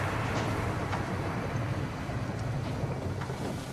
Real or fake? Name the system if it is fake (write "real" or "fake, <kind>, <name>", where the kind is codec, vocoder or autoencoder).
real